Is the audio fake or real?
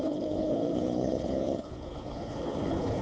fake